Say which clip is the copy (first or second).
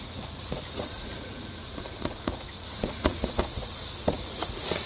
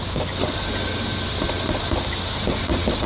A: first